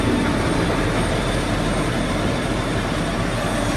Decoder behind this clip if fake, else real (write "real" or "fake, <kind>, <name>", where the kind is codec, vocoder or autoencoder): real